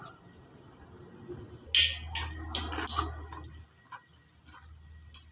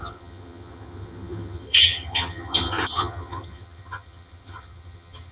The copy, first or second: second